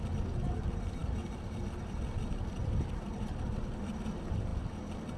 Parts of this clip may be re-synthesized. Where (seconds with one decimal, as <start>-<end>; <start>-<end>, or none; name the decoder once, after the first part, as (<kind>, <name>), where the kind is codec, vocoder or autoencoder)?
0.0-4.5 (vocoder, BigVGAN v2)

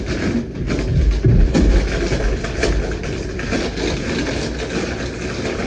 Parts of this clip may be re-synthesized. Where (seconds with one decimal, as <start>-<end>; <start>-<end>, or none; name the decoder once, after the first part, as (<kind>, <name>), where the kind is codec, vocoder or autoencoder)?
none

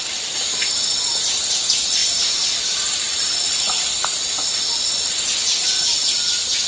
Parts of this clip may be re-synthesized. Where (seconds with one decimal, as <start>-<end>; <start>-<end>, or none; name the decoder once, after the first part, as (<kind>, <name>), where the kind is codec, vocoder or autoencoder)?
none

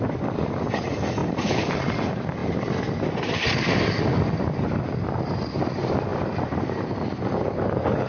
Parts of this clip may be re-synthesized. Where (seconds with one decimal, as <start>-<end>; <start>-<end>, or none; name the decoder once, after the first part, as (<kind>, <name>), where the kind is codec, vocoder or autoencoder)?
1.2-1.7 (vocoder, BigVGAN v2); 6.1-8.1

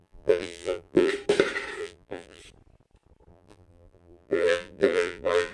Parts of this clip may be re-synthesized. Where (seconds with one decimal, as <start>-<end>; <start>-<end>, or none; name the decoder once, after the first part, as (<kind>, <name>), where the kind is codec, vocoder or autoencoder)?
0.0-1.1 (vocoder, BigVGAN v2); 1.8-2.4; 3.3-5.5

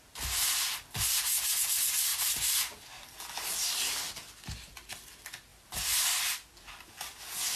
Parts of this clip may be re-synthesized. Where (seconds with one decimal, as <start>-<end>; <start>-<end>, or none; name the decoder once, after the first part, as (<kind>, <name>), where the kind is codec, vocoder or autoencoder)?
2.1-2.6 (vocoder, BigVGAN v2); 5.5-6.0

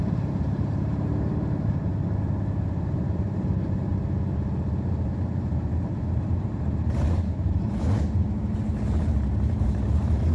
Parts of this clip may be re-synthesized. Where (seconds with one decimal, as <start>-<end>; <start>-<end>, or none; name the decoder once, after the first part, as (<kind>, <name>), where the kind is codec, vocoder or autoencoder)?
0.0-1.9 (vocoder, BigVGAN v2); 2.9-3.9; 5.9-10.3